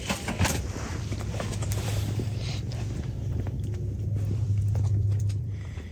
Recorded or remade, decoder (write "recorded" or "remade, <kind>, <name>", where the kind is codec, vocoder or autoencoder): remade, vocoder, BigVGAN v2